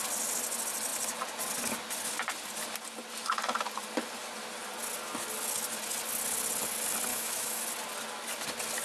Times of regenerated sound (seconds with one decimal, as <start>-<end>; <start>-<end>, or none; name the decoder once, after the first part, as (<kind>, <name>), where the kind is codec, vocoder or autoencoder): 7.1-7.6 (autoencoder, DAC-VAE)